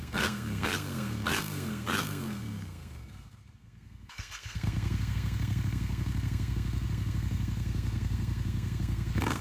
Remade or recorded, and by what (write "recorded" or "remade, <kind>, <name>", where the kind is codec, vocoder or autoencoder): remade, codec, SNAC